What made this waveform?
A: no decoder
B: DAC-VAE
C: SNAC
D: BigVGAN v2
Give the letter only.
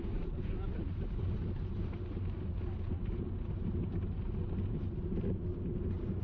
A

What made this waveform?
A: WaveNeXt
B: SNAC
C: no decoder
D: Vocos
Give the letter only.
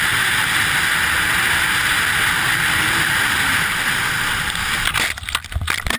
C